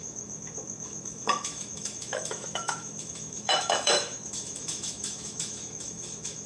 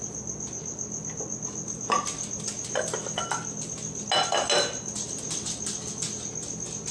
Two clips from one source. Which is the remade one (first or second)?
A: first